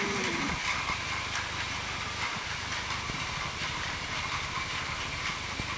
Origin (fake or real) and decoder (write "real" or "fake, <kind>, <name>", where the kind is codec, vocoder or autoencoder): real